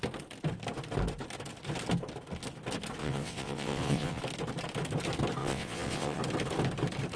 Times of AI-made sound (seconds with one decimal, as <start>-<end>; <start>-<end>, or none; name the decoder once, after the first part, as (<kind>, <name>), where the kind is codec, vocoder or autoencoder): 3.0-4.2 (vocoder, WaveNeXt); 5.4-6.2